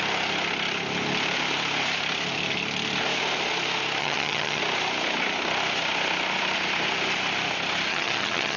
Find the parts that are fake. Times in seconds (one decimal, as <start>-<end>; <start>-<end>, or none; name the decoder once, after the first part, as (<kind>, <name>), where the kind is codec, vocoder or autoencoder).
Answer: 4.0-4.6 (vocoder, HiFi-GAN); 7.9-8.6